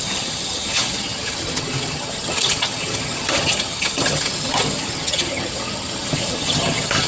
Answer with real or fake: fake